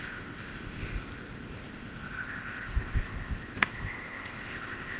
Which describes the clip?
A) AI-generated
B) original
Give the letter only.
A